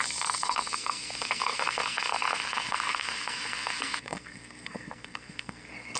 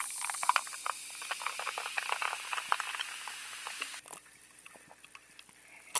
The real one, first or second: second